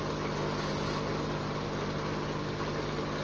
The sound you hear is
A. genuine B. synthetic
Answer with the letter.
A